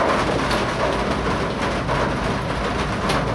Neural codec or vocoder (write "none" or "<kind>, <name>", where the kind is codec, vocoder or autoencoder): none